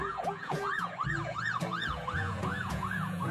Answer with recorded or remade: remade